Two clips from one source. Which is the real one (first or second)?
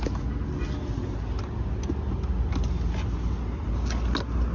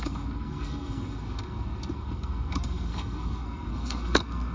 first